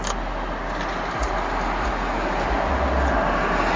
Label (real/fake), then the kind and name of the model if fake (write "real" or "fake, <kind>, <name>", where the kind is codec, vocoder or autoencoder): real